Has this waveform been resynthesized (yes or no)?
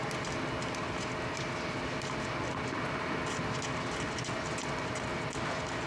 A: no